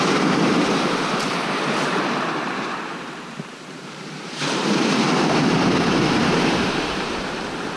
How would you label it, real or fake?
fake